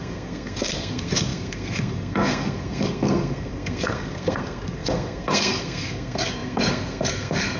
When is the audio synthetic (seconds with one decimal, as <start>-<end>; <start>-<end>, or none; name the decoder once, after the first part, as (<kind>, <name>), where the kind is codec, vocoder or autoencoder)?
0.0-7.6 (codec, SNAC)

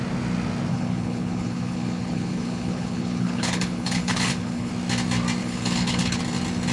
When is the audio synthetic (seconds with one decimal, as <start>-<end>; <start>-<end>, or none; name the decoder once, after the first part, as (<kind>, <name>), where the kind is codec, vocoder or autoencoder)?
0.7-4.7 (codec, HILCodec); 5.4-6.2

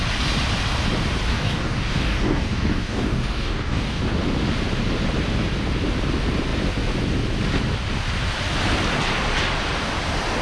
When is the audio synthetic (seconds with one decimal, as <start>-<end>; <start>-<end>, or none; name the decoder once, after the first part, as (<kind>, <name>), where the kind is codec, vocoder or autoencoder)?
1.3-4.0 (codec, DAC)

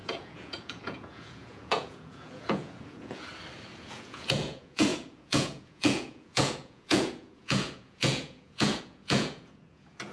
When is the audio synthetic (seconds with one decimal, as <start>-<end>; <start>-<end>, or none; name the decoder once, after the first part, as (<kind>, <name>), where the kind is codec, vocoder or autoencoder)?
0.0-3.3 (vocoder, Vocos); 3.8-10.1